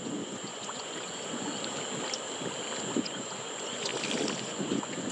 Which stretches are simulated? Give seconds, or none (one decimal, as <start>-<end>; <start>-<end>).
0.0-1.5; 2.8-3.9; 4.4-5.1